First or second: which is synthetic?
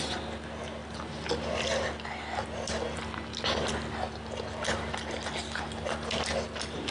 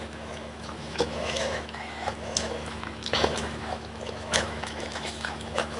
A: second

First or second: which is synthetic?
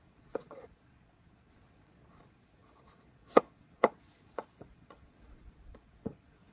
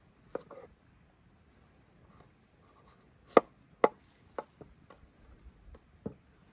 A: first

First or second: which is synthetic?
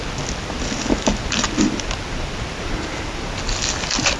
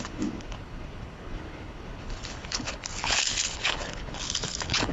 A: second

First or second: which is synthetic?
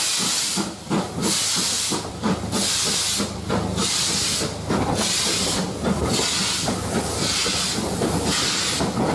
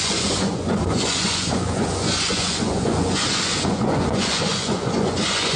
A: second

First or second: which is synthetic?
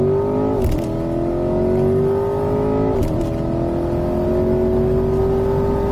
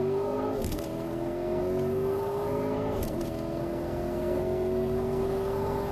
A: second